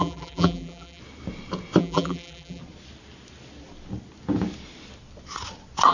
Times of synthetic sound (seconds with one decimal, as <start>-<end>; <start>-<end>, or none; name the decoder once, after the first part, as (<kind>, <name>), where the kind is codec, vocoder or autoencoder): 0.0-1.0 (vocoder, BigVGAN v2); 1.8-2.6